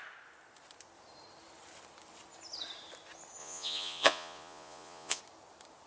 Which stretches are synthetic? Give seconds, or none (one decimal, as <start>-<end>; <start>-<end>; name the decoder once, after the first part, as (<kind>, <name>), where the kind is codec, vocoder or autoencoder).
3.4-5.2 (vocoder, Vocos)